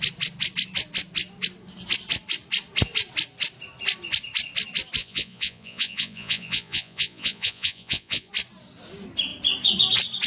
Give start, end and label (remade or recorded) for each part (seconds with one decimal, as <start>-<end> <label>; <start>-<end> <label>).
0.0-5.0 recorded; 5.0-8.3 remade; 8.3-10.3 recorded